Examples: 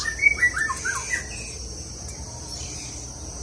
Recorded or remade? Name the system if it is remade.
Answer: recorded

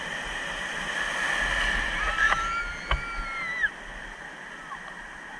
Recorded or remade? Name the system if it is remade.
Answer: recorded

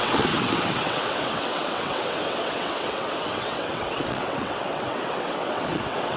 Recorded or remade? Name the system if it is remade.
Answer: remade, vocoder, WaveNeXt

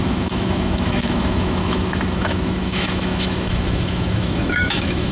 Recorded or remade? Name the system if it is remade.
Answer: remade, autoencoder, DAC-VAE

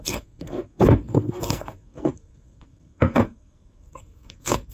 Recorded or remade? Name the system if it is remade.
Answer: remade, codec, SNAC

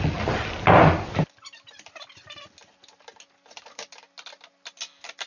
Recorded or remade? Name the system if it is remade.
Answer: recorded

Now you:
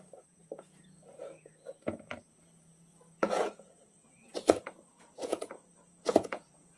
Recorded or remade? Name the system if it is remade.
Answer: remade, vocoder, Vocos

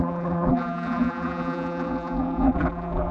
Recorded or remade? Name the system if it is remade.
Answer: remade, vocoder, BigVGAN v2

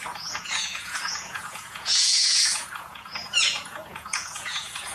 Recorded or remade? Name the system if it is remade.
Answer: remade, vocoder, Vocos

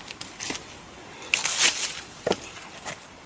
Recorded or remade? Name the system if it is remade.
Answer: recorded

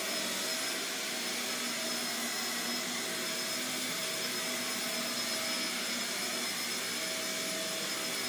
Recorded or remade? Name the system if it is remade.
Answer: recorded